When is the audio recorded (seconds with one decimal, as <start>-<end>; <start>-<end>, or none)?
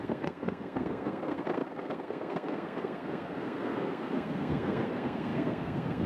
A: none